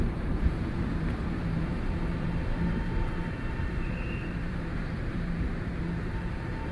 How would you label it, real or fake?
fake